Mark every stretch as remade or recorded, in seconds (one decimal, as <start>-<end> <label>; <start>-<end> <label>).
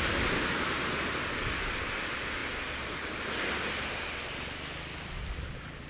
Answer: 0.0-5.9 recorded